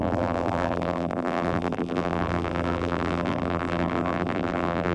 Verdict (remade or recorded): remade